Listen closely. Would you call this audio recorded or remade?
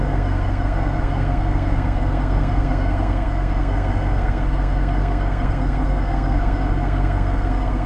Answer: remade